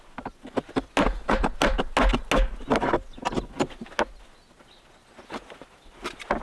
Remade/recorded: recorded